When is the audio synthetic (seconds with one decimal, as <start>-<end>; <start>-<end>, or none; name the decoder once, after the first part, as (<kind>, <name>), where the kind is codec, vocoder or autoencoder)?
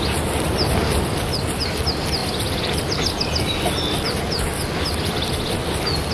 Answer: none